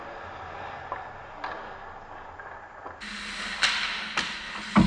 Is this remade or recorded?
recorded